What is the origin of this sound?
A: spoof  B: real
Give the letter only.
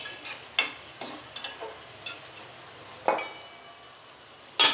B